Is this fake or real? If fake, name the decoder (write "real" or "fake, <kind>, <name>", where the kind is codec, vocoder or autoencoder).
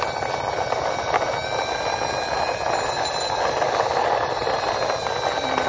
real